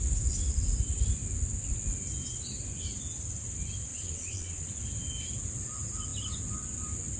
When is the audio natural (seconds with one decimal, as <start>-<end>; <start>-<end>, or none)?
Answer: 0.0-3.9; 4.7-7.2

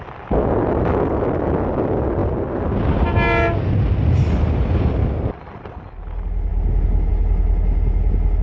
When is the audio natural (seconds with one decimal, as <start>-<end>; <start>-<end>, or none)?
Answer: 0.0-8.4